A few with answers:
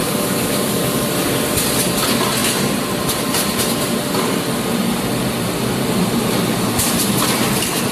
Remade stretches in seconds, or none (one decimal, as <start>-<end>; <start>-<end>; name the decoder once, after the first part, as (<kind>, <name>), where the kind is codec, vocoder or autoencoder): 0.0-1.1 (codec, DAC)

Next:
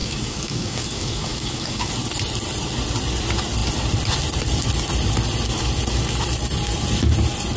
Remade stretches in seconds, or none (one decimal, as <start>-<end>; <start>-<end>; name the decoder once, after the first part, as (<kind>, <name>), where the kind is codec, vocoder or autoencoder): 0.0-1.9 (codec, DAC)

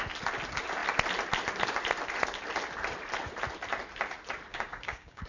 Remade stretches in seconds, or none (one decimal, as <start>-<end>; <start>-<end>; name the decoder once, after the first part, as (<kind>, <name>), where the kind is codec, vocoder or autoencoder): 4.5-5.3 (codec, DAC)